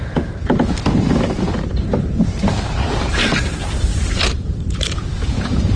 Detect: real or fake fake